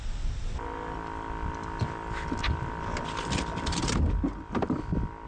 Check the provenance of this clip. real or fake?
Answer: real